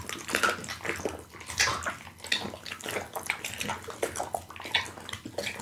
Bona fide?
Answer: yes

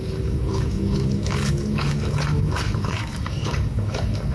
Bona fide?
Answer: no